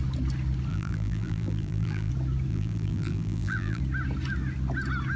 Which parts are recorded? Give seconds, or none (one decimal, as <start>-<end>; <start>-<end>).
0.0-0.7; 2.1-2.5; 3.8-5.2